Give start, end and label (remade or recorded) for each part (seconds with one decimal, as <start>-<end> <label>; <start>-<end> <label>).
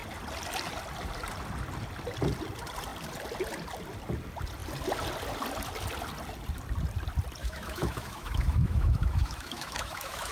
0.0-7.4 recorded; 7.4-10.3 remade